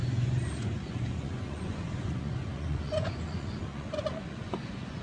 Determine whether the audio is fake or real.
fake